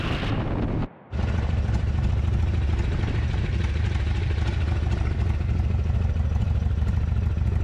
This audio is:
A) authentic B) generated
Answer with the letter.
A